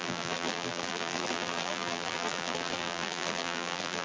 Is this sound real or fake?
fake